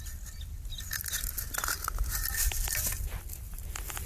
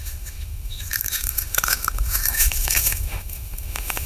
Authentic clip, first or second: first